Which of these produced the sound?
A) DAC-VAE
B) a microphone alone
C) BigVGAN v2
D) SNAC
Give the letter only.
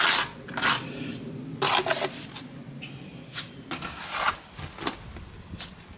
B